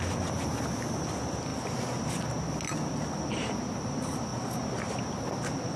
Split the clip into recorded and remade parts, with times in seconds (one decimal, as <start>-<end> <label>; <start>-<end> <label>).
0.0-5.8 recorded